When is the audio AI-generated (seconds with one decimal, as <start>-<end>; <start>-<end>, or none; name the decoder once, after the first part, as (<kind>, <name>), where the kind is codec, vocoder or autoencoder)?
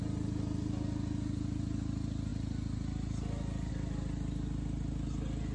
none